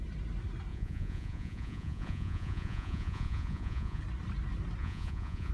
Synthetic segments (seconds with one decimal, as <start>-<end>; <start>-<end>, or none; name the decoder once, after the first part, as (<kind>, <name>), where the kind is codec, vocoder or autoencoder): 0.7-4.0 (vocoder, Vocos); 4.8-5.5